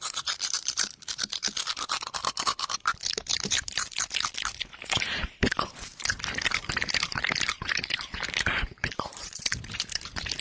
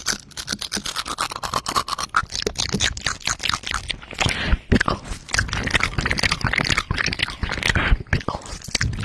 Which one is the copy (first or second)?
first